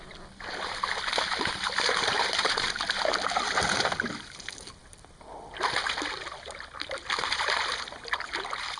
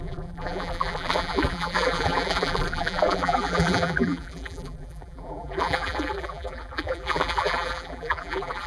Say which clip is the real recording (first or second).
first